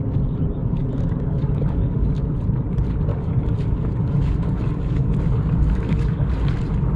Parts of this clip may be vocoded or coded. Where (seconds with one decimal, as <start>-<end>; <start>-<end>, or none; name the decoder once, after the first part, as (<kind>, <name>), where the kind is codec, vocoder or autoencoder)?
0.6-2.2 (codec, DAC); 3.1-6.3